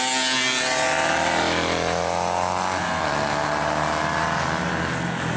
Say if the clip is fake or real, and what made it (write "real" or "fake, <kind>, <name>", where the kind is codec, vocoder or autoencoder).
real